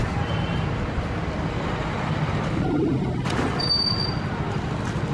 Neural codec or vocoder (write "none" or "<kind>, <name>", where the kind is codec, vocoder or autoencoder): none